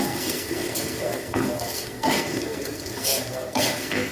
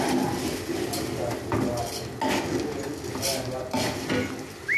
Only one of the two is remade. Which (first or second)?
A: first